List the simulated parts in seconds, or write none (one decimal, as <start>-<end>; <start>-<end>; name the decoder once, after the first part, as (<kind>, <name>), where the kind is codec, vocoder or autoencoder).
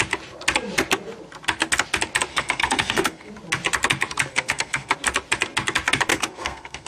2.3-3.3 (codec, SNAC); 4.3-4.9; 6.1-6.9